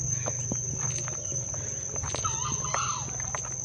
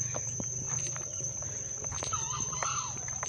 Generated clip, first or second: second